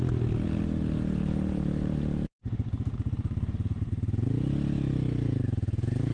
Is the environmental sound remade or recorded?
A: recorded